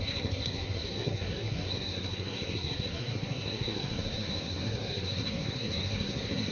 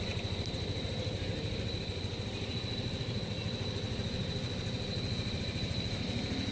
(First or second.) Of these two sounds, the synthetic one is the first